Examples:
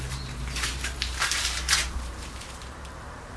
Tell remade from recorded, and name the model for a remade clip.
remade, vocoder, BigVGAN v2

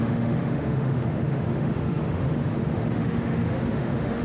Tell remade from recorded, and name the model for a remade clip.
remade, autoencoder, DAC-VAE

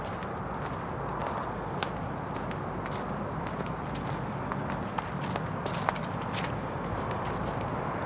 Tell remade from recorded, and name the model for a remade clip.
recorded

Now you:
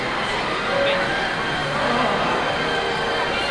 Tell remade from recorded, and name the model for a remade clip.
recorded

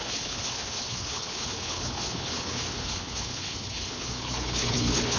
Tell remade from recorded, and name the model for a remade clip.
remade, codec, HILCodec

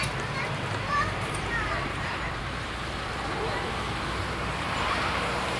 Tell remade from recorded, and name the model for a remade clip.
remade, vocoder, BigVGAN v2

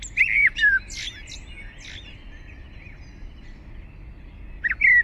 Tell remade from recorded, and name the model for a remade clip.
recorded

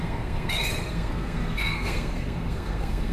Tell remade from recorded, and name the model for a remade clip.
remade, codec, SNAC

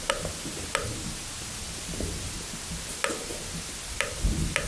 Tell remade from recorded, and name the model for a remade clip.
recorded